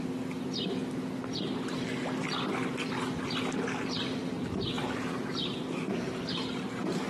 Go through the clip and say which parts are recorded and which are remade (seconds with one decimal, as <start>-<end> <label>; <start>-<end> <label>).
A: 0.0-7.1 recorded